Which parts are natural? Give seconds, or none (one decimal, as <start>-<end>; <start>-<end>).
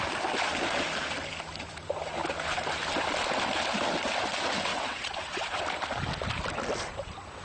0.0-4.7; 5.6-7.4